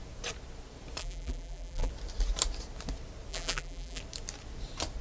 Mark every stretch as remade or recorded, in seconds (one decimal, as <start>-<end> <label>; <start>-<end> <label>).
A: 0.0-1.0 recorded; 1.0-1.9 remade; 1.9-3.3 recorded; 3.3-4.0 remade; 4.0-5.0 recorded